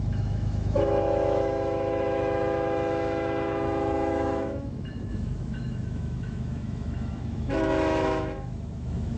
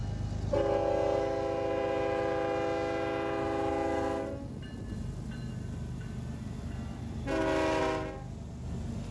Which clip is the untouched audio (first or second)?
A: second